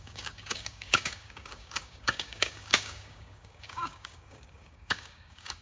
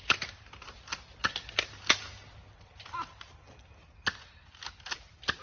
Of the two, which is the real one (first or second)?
second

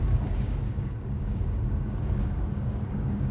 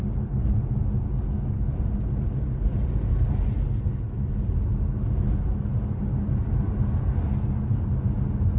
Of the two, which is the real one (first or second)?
second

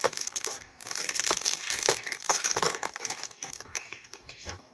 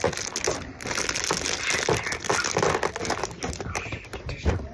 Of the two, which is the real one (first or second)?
second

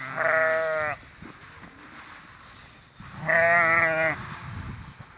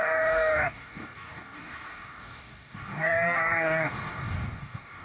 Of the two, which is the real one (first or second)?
first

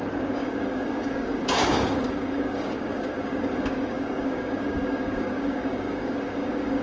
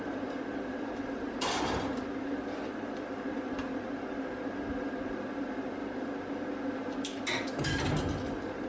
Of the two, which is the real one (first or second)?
second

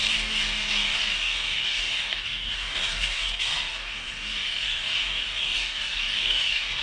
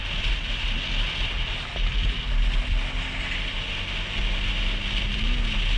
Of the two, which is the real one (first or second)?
second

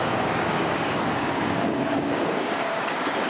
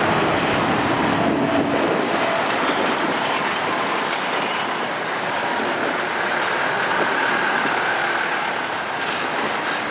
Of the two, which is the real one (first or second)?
second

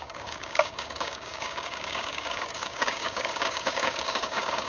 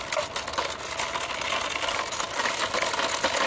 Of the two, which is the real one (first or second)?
second